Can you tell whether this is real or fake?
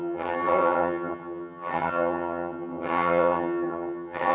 fake